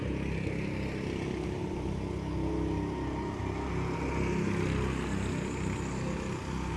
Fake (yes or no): no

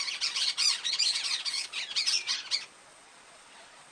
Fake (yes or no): yes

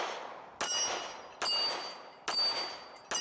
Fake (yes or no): no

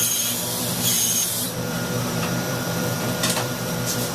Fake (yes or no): yes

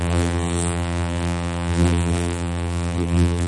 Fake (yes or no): yes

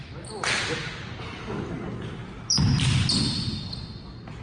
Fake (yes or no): no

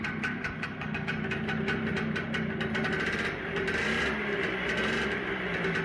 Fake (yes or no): no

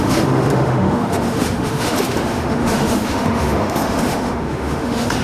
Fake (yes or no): yes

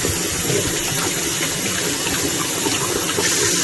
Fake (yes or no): no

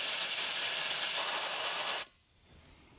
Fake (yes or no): no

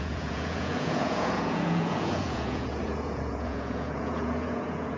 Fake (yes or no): yes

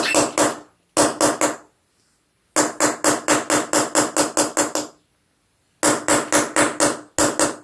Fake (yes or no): no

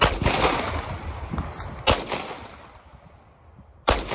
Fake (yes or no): no